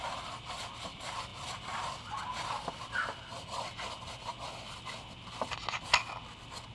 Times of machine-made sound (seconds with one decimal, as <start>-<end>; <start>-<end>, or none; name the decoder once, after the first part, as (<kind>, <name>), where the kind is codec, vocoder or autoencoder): none